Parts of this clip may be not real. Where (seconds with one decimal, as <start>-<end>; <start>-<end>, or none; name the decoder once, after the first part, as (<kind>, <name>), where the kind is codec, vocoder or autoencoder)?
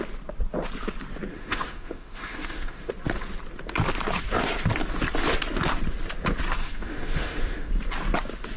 1.3-2.9 (autoencoder, DAC-VAE); 6.6-7.7